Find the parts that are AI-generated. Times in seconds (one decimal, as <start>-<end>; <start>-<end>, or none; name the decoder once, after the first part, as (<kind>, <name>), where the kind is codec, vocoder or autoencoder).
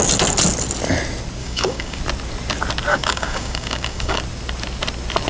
1.4-2.0 (codec, DAC); 2.9-4.2